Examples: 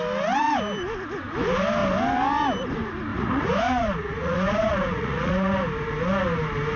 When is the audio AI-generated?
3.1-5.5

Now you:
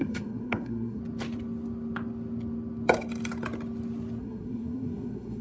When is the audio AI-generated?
0.0-1.0; 4.2-5.4

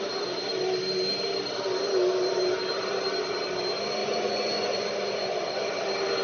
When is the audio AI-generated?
4.0-5.8

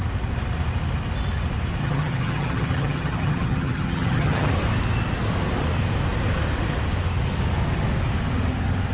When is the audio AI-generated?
1.8-4.5

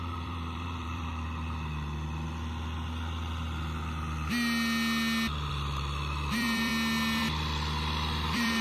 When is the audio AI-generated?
0.0-1.1; 5.5-6.7; 7.2-8.6